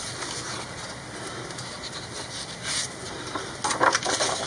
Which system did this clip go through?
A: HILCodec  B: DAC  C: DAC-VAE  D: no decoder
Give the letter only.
D